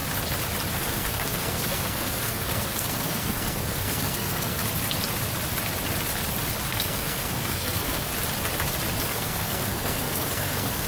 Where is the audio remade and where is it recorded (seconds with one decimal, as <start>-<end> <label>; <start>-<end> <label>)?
0.0-0.7 recorded; 0.7-4.6 remade; 4.6-6.7 recorded; 6.7-8.1 remade; 8.1-9.0 recorded; 9.0-10.9 remade